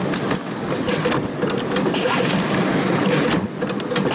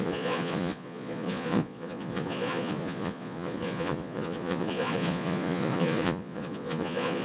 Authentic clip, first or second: first